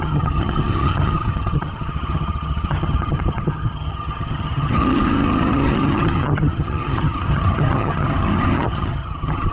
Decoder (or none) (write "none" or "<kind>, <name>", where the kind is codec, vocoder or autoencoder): vocoder, HiFi-GAN